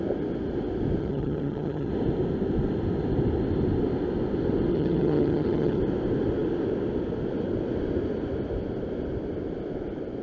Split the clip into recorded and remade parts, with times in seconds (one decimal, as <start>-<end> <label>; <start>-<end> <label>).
0.0-1.0 recorded; 1.0-1.9 remade; 1.9-4.7 recorded; 4.7-5.8 remade; 5.8-10.2 recorded